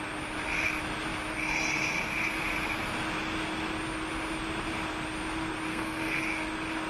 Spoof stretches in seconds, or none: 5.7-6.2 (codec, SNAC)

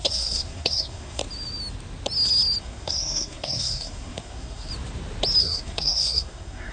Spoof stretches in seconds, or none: 0.0-1.2 (codec, SNAC); 2.6-4.7; 5.4-6.7

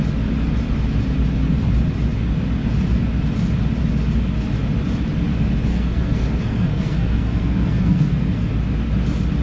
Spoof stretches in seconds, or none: 5.7-8.5 (codec, SNAC)

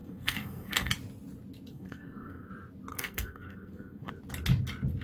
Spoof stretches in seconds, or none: 0.0-0.9 (codec, SNAC); 1.7-2.5; 2.9-4.1

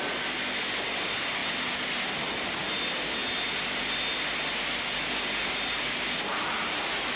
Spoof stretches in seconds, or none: none